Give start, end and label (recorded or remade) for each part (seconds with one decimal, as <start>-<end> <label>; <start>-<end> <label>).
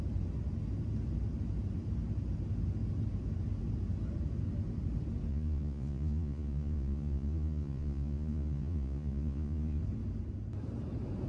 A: 0.0-5.3 recorded; 5.3-9.8 remade; 9.8-11.3 recorded